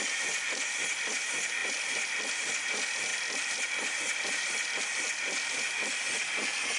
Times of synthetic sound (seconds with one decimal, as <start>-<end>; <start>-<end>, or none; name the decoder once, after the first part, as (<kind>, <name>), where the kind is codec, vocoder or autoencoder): none